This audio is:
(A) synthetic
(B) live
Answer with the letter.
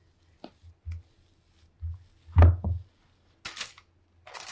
B